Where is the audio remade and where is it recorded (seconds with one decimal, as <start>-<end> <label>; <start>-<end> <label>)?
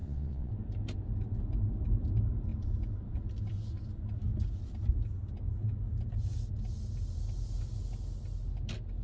0.0-0.5 remade; 0.5-9.0 recorded